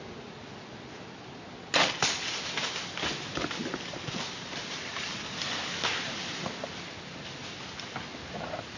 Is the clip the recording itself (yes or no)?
yes